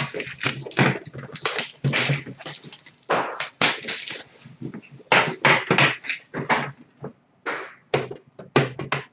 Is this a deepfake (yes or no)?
no